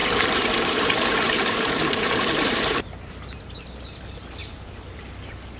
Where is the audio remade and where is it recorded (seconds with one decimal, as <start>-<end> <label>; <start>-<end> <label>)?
0.0-3.4 remade; 3.4-4.4 recorded; 4.4-5.0 remade; 5.0-5.6 recorded

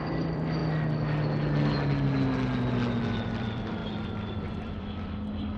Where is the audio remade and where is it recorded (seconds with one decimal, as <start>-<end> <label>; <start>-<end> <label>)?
0.0-0.6 remade; 0.6-3.0 recorded; 3.0-3.8 remade; 3.8-4.3 recorded; 4.3-5.6 remade